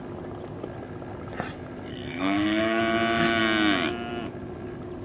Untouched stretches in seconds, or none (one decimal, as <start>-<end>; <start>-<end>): 0.0-1.9; 2.8-5.0